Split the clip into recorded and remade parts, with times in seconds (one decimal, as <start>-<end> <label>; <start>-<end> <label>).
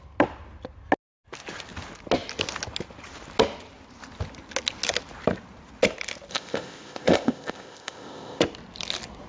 0.0-6.3 recorded; 6.3-8.4 remade; 8.4-9.3 recorded